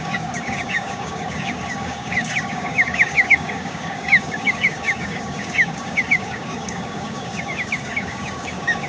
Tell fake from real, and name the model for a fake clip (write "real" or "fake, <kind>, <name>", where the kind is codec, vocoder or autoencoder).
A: fake, codec, DAC